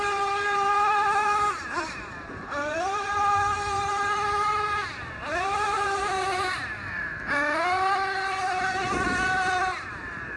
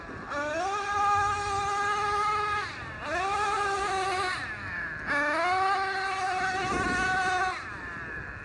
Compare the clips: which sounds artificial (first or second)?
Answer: first